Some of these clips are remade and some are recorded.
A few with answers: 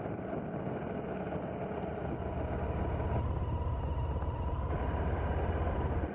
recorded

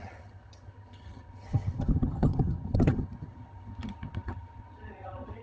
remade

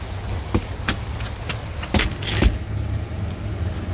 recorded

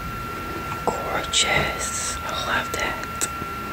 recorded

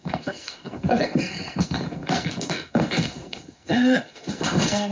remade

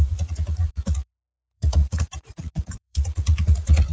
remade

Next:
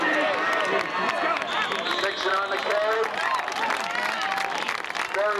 recorded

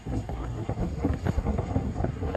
remade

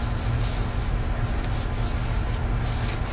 recorded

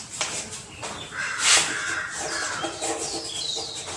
recorded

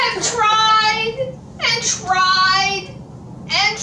recorded